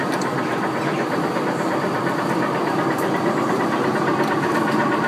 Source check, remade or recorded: remade